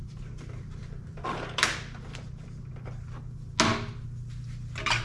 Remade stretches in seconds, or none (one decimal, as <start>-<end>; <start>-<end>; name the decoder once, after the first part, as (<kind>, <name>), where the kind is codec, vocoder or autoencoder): 0.0-2.9 (vocoder, BigVGAN v2)